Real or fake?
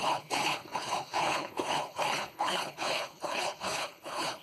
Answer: fake